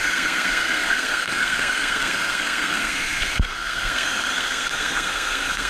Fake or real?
fake